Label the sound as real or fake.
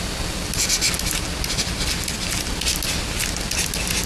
real